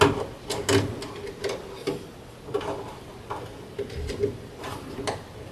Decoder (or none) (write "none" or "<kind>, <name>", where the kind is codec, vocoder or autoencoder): none